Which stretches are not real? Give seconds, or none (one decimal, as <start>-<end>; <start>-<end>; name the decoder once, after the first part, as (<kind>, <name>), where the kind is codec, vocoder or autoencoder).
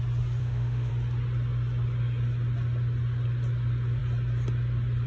0.4-0.9 (autoencoder, DAC-VAE)